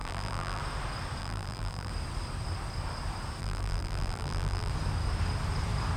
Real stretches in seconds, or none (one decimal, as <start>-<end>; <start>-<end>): 0.6-1.2; 1.9-3.4; 4.7-6.0